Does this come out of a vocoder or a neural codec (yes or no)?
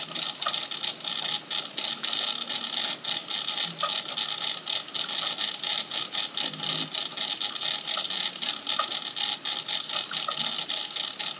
no